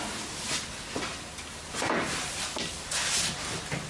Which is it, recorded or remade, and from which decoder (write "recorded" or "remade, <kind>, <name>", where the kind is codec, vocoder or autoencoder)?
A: recorded